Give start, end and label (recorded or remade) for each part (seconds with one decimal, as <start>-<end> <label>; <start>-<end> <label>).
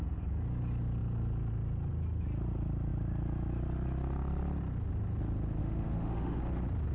0.0-5.6 recorded; 5.6-6.4 remade; 6.4-6.9 recorded